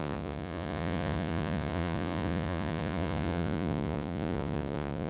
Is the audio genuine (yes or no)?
no